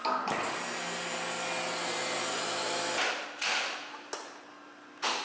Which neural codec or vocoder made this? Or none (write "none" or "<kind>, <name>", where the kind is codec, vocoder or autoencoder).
none